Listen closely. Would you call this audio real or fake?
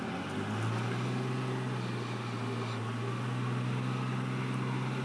real